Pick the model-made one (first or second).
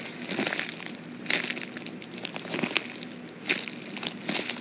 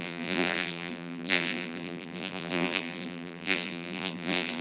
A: second